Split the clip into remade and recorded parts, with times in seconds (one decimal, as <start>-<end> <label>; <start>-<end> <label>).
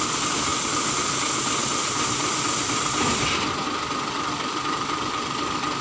0.0-0.5 remade; 0.5-3.5 recorded; 3.5-5.8 remade